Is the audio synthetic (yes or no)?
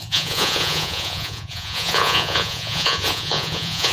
yes